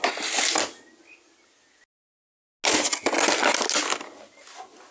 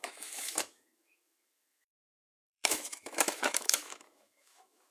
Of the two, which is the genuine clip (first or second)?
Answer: first